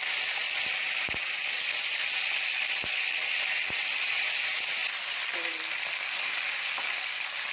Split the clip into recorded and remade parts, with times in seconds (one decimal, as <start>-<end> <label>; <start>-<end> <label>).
0.0-7.5 recorded